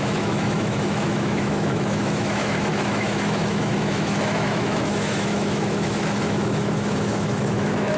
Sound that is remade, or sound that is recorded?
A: remade